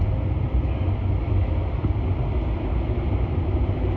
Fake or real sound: real